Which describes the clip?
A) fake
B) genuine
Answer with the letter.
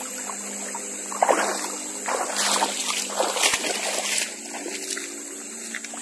B